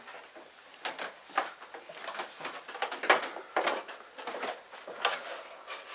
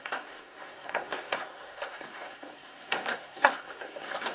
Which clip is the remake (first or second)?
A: second